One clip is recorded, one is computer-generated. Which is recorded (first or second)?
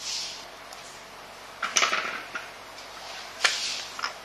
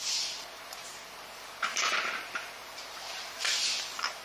first